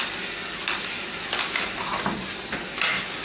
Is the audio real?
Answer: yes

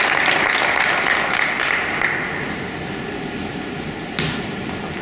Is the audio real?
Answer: yes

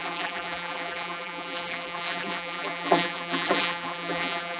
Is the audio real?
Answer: no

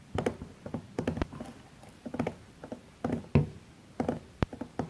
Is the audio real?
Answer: yes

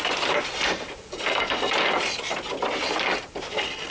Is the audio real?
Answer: yes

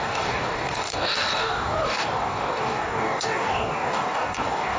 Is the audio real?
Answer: no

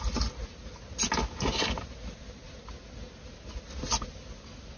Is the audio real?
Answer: yes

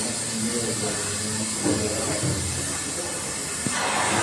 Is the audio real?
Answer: yes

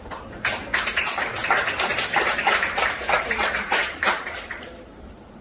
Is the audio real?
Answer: no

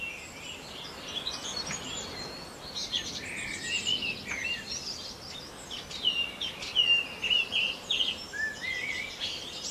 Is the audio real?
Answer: yes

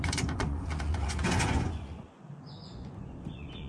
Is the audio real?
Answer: no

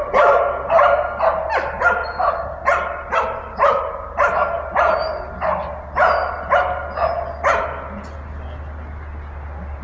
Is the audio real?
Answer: yes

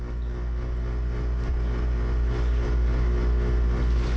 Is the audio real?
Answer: yes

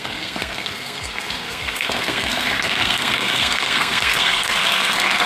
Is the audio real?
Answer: no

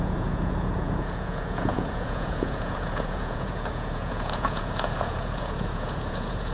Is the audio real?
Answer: no